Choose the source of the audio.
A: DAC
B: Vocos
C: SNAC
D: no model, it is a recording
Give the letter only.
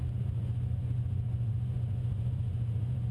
B